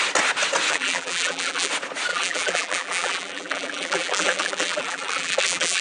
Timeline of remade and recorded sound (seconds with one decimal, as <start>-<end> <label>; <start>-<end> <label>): 0.0-0.7 recorded; 0.7-1.7 remade; 1.7-2.1 recorded; 2.1-5.8 remade